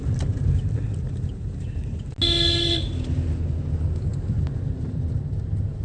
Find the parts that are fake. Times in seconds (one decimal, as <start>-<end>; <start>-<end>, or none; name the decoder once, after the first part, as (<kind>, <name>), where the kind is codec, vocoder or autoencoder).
none